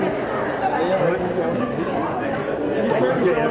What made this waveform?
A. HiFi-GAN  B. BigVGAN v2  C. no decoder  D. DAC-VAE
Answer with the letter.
C